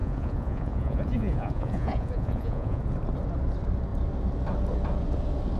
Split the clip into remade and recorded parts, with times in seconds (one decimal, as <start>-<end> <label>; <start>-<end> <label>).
0.0-2.8 remade; 2.8-5.6 recorded